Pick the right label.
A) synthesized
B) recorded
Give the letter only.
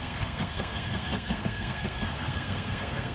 A